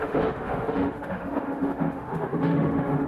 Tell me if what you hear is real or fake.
fake